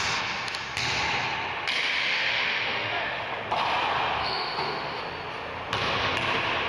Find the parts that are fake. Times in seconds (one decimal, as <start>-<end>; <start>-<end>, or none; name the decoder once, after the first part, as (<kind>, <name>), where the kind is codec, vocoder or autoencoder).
2.0-3.3 (autoencoder, DAC-VAE); 4.2-5.0